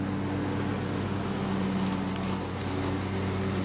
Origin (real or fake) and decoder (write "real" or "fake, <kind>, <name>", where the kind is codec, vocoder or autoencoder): real